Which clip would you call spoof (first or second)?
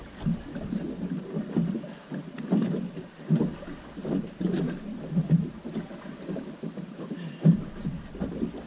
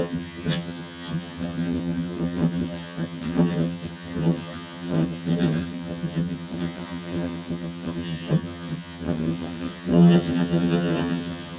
second